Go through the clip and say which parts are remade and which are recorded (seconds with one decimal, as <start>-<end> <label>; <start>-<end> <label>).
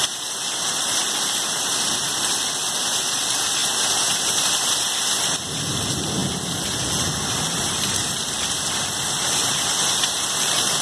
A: 0.0-3.6 remade; 3.6-5.1 recorded; 5.1-6.2 remade; 6.2-7.5 recorded; 7.5-10.8 remade